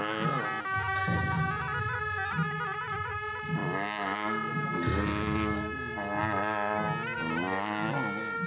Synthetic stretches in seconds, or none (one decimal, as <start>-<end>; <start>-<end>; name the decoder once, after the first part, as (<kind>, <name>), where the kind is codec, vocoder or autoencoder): none